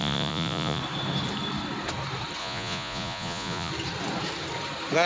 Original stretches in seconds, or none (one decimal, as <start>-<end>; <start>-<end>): 0.8-2.4; 3.7-5.1